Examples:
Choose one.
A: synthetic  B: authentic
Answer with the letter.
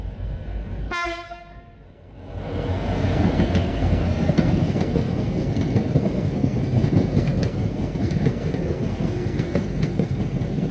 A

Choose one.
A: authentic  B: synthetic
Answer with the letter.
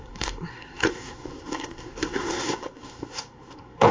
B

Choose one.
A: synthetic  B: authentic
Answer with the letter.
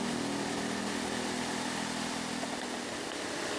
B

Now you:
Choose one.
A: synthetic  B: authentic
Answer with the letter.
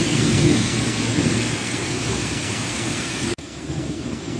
A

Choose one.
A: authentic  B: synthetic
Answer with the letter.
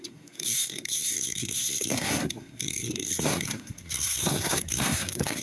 B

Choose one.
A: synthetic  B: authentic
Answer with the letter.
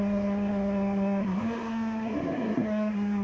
A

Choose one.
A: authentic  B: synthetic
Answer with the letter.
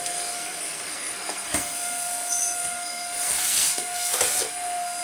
B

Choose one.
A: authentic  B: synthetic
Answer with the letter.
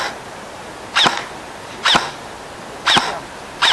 A